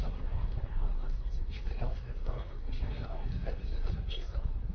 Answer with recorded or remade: remade